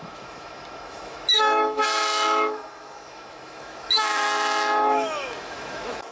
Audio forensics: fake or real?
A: fake